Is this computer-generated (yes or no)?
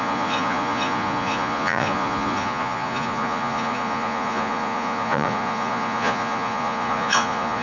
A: yes